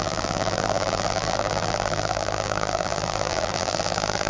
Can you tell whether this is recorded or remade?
remade